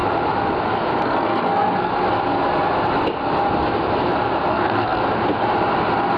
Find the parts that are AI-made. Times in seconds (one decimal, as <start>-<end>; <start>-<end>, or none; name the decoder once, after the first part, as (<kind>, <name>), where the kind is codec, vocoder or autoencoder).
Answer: 1.0-1.9 (codec, SNAC); 4.5-5.0